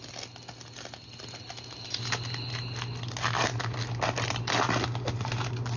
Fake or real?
real